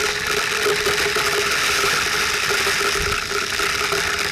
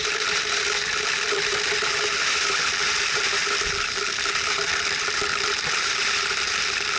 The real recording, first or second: first